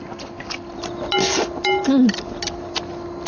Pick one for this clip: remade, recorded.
recorded